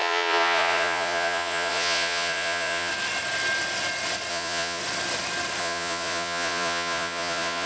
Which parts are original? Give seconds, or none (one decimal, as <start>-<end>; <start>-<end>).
2.9-4.3; 4.8-5.6